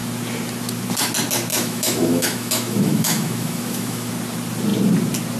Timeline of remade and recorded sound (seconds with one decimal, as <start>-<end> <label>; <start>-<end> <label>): 0.0-1.5 recorded; 1.5-4.1 remade; 4.1-5.4 recorded